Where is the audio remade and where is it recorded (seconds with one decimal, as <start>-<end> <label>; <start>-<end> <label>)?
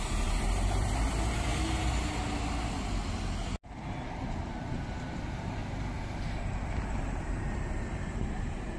0.0-1.5 remade; 1.5-4.9 recorded; 4.9-5.6 remade; 5.6-6.9 recorded; 6.9-8.8 remade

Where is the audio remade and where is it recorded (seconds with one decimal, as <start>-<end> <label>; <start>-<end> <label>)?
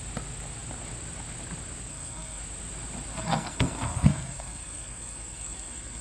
0.0-1.9 recorded; 1.9-2.4 remade; 2.4-3.1 recorded; 3.1-6.0 remade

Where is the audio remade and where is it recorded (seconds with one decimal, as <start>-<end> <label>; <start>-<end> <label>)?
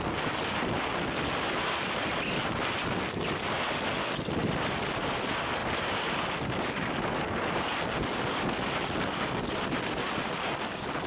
0.0-11.1 recorded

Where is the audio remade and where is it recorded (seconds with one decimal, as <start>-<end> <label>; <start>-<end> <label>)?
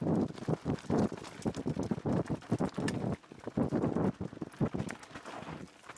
0.0-6.0 recorded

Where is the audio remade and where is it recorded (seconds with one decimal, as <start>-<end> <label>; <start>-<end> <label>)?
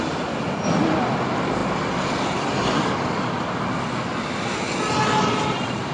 0.0-5.9 recorded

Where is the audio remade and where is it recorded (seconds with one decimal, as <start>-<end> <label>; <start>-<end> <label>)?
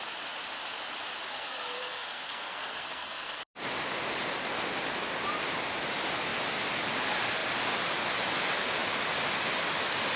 0.0-1.3 recorded; 1.3-3.4 remade; 3.4-10.2 recorded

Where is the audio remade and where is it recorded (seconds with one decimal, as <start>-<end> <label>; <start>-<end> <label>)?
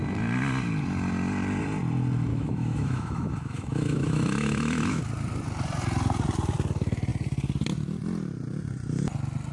0.0-2.3 recorded; 2.3-5.0 remade; 5.0-9.5 recorded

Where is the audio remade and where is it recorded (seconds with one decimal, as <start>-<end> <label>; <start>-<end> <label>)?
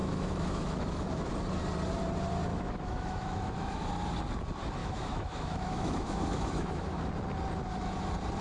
0.0-1.3 remade; 1.3-2.5 recorded; 2.5-3.9 remade; 3.9-4.8 recorded; 4.8-7.1 remade; 7.1-8.4 recorded